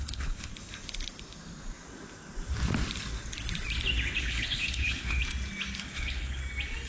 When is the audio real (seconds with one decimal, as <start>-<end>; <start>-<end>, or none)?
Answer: 0.5-4.2; 5.2-5.8; 6.4-6.9

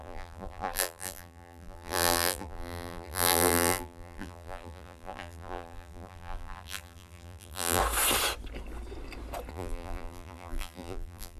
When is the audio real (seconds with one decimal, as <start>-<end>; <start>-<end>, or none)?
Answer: 7.8-9.5

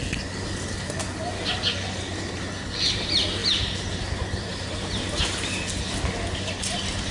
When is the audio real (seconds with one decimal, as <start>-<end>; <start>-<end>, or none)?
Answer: 0.0-7.1

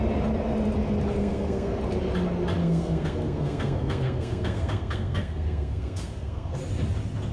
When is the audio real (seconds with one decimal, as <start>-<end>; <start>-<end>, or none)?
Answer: 0.0-1.2; 1.8-2.6; 6.6-7.3

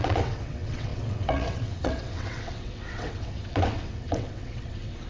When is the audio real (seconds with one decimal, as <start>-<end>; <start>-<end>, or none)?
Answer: none